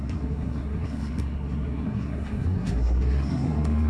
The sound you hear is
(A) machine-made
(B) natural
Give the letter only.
A